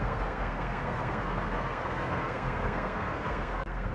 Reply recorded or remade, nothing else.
remade